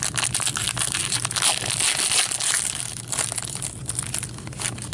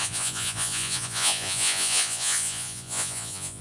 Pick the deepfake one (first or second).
second